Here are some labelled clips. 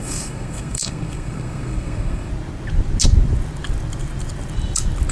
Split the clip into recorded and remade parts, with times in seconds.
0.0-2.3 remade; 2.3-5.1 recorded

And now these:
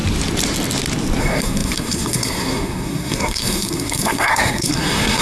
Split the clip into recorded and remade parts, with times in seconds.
0.0-1.2 recorded; 1.2-5.2 remade

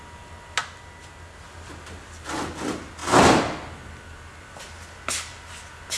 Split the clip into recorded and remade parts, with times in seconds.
0.0-6.0 recorded

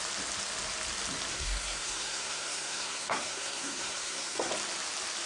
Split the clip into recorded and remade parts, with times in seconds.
0.0-1.3 recorded; 1.3-4.5 remade; 4.5-5.3 recorded

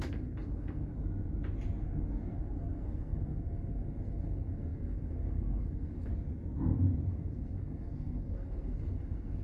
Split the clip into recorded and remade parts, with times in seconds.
0.0-1.0 remade; 1.0-1.8 recorded; 1.8-6.1 remade; 6.1-7.1 recorded; 7.1-9.4 remade

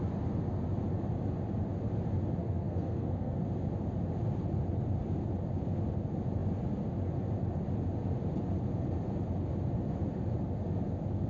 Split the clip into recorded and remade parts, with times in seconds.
0.0-2.4 recorded; 2.4-3.4 remade; 3.4-11.3 recorded